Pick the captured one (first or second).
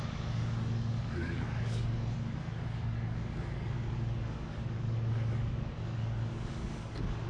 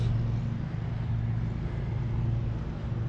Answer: second